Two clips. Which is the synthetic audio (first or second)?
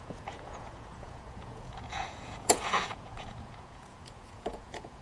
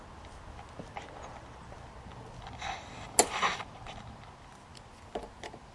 first